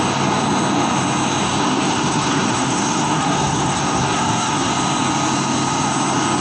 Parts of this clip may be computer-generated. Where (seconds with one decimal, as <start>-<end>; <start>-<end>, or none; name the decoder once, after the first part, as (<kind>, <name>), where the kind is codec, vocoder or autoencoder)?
1.6-4.7 (codec, SNAC)